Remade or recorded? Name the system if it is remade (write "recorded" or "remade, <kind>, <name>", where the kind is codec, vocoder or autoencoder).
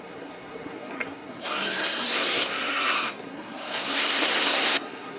remade, codec, SNAC